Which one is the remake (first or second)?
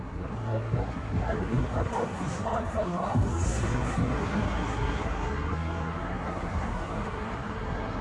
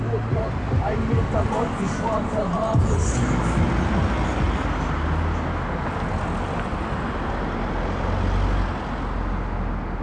first